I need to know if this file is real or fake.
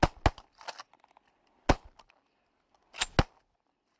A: real